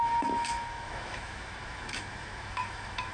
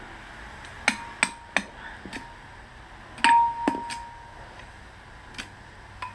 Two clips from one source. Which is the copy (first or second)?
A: first